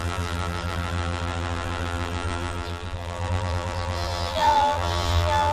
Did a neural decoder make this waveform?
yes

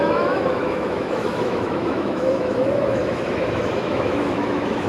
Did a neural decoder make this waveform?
yes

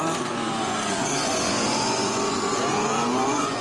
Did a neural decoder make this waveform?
yes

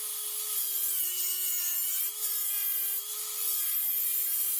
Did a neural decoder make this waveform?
no